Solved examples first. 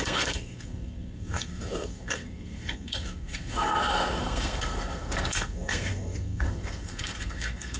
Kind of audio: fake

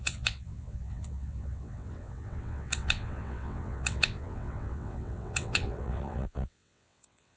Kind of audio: fake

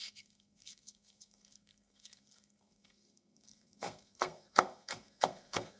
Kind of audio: fake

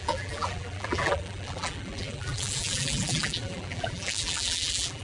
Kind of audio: fake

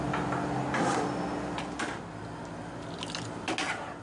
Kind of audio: real